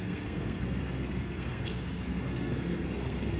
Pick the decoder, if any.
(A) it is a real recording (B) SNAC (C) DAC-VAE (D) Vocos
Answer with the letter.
B